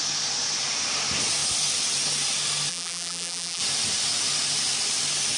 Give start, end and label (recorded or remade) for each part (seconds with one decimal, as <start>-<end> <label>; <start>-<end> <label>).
0.0-2.7 recorded; 2.7-3.6 remade; 3.6-5.4 recorded